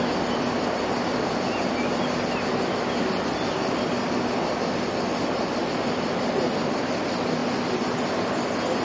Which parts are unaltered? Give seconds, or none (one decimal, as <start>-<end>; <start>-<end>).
0.0-8.8